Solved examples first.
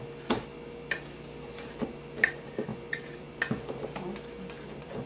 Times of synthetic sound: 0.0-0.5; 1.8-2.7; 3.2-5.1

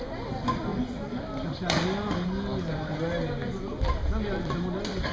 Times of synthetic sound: none

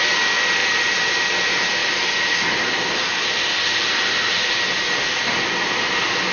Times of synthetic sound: 0.6-1.2; 1.8-4.6

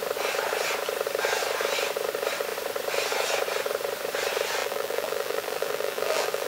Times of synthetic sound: 4.6-6.5

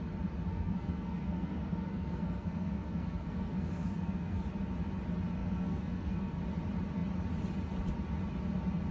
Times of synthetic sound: 0.5-4.4; 5.4-6.4